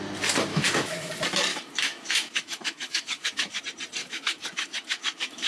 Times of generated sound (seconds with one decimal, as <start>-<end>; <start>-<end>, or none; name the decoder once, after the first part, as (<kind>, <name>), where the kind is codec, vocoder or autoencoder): 0.5-1.1 (autoencoder, DAC-VAE); 1.5-3.6; 4.0-5.5